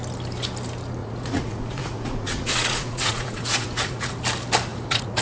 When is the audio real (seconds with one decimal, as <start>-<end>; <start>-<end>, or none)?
0.0-1.0; 4.1-4.7